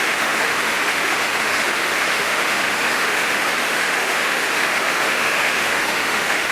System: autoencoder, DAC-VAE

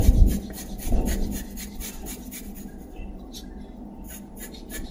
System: none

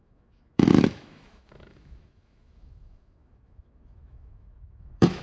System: autoencoder, DAC-VAE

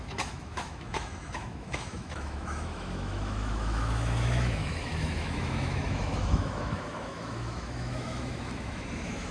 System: autoencoder, DAC-VAE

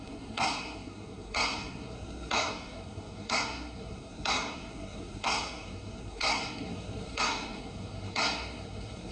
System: codec, SNAC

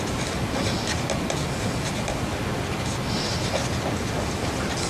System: none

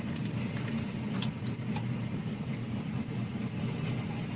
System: none